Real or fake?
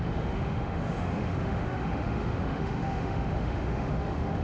fake